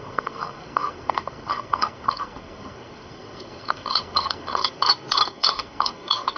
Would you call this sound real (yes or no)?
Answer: no